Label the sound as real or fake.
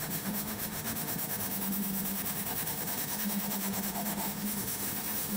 fake